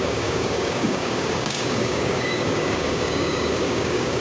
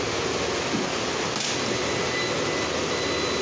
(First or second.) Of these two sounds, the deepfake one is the first